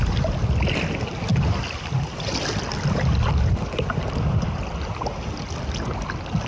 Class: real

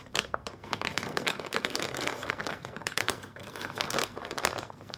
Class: fake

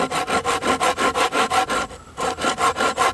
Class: real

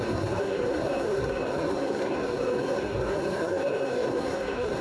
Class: fake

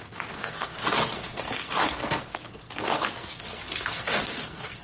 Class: fake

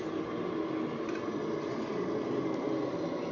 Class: real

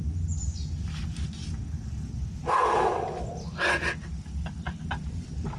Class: real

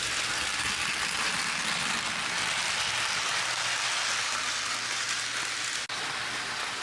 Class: real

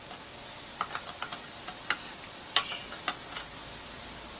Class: real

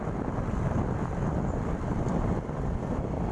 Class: real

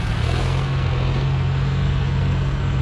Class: fake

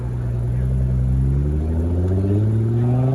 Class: real